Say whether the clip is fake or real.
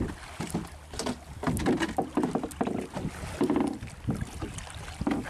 real